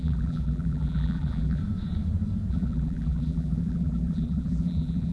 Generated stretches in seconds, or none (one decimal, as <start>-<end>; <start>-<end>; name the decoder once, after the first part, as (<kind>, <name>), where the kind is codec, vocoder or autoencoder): 0.0-1.6 (vocoder, BigVGAN v2); 2.5-5.1